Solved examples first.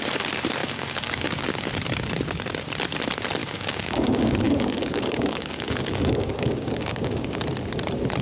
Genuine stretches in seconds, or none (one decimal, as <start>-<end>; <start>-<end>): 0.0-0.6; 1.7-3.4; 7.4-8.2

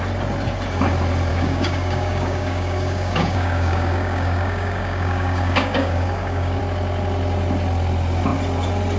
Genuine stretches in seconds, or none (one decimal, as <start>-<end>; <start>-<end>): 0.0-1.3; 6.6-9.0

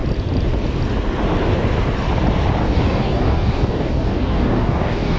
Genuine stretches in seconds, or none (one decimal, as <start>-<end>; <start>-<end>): 0.0-2.6

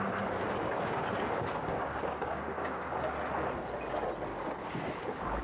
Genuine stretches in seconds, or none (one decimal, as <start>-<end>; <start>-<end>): 0.0-0.4; 3.1-4.3

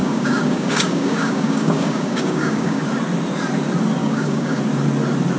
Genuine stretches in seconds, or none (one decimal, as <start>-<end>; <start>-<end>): 2.8-4.0; 4.6-5.4